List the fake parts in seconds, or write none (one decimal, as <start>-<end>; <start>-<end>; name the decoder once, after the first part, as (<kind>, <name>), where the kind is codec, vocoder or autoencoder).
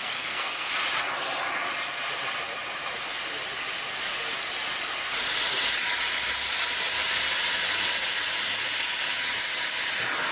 0.0-0.7 (codec, SNAC)